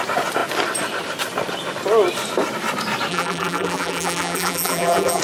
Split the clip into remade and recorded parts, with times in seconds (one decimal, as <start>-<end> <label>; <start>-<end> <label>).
0.0-3.1 recorded; 3.1-5.2 remade